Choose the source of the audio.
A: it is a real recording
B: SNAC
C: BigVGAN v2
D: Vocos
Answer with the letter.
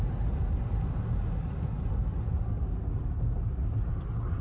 A